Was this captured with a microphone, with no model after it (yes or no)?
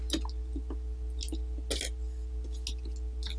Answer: yes